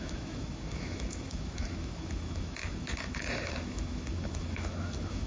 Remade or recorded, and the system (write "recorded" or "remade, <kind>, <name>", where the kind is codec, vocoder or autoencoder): remade, autoencoder, DAC-VAE